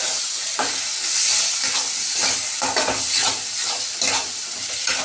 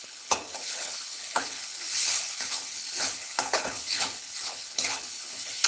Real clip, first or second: first